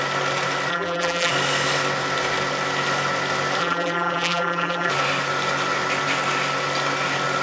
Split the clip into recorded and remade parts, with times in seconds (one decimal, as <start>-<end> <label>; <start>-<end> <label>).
0.0-0.7 recorded; 0.7-1.3 remade; 1.3-3.6 recorded; 3.6-4.9 remade; 4.9-7.4 recorded

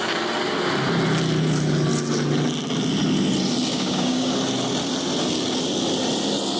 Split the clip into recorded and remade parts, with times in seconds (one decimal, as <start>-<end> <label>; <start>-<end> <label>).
0.0-3.7 recorded; 3.7-4.3 remade; 4.3-6.6 recorded

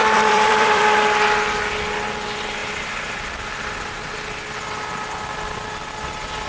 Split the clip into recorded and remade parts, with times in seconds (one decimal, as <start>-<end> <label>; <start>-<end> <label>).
0.0-0.8 remade; 0.8-2.6 recorded; 2.6-3.7 remade; 3.7-6.5 recorded

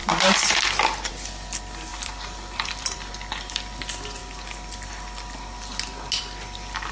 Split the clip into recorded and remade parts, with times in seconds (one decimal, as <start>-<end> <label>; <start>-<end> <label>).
0.0-1.9 recorded; 1.9-3.1 remade; 3.1-6.9 recorded

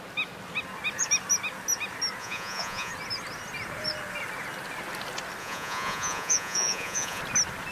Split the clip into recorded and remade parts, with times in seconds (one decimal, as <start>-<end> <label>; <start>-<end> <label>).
0.0-2.2 recorded; 2.2-2.9 remade; 2.9-5.4 recorded; 5.4-7.2 remade; 7.2-7.7 recorded

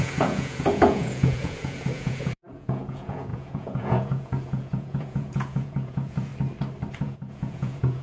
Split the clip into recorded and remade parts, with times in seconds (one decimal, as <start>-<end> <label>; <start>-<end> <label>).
0.0-6.3 remade; 6.3-7.0 recorded; 7.0-8.0 remade